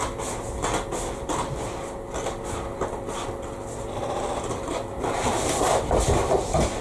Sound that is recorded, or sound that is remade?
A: recorded